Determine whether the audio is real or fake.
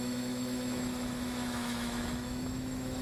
fake